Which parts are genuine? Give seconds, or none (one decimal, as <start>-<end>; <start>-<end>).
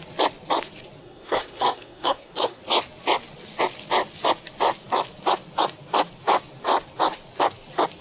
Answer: 0.0-1.0; 2.6-8.0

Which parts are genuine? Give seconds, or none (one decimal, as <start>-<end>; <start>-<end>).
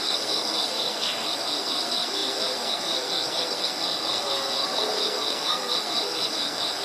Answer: none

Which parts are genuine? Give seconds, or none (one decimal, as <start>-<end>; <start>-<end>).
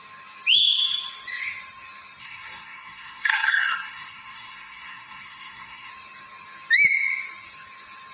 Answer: 0.0-2.2; 5.9-8.1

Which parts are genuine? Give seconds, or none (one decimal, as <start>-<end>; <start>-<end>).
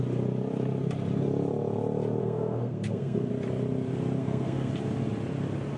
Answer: 0.0-2.2; 3.3-4.2; 4.7-5.8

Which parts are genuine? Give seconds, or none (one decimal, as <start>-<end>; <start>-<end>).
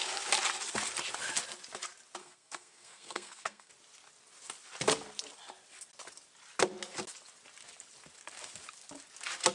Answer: 0.0-2.2; 3.7-9.5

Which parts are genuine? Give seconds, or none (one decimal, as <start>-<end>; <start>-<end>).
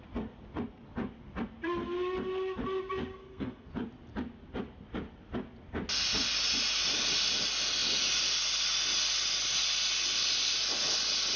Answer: 0.0-3.1; 3.7-11.4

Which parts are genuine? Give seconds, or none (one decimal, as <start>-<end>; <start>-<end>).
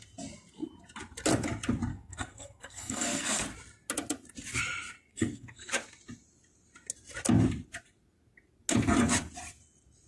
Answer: 0.0-1.9; 3.4-5.1; 5.7-10.1